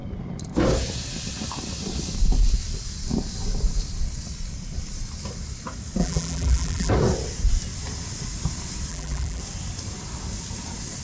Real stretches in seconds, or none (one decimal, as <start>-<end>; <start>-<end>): 0.0-6.0; 6.9-8.9; 9.4-11.0